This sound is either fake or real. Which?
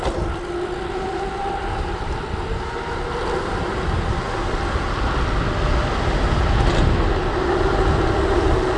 real